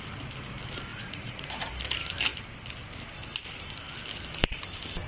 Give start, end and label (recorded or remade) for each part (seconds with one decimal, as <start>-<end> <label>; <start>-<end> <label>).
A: 0.0-0.9 recorded; 0.9-1.7 remade; 1.7-5.1 recorded